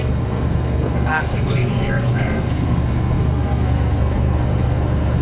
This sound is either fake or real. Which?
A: fake